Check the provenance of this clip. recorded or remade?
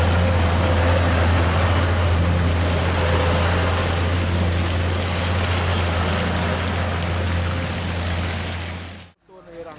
recorded